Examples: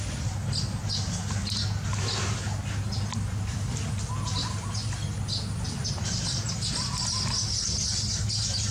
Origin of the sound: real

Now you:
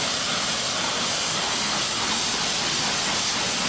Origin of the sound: real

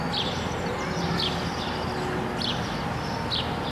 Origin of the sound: real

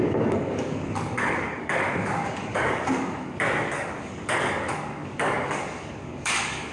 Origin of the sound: fake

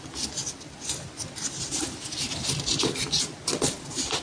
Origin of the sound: real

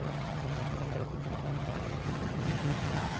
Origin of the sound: fake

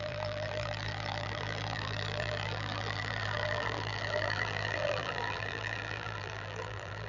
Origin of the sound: fake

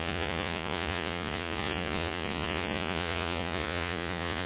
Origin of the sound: fake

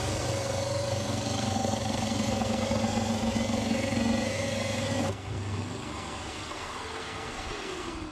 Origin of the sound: fake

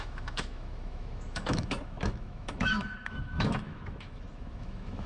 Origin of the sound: fake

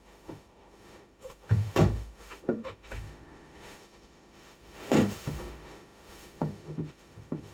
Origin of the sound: fake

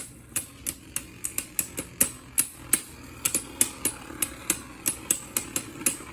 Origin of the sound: real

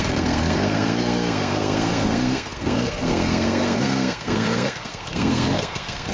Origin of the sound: fake